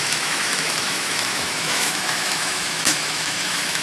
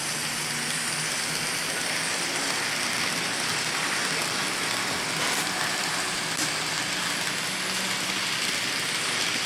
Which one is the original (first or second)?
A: second